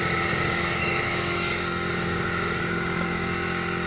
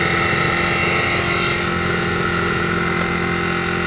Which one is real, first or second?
second